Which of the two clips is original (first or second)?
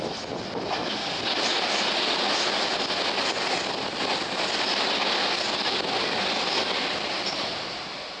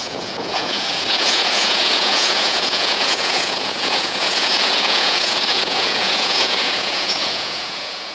first